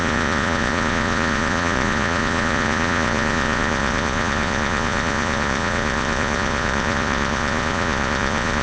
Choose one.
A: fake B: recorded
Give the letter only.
A